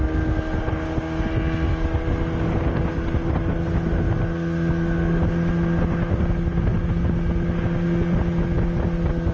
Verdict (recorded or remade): recorded